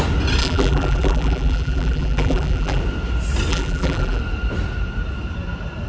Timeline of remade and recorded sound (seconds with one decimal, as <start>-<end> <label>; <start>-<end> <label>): 0.0-0.4 recorded; 0.4-2.8 remade; 2.8-3.5 recorded; 3.5-4.2 remade; 4.2-5.9 recorded